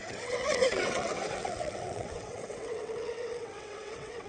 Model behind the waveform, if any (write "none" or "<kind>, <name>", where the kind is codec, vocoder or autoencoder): vocoder, WaveNeXt